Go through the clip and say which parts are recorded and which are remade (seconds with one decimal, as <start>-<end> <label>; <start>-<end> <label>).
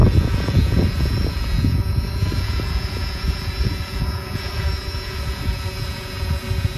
0.0-6.8 remade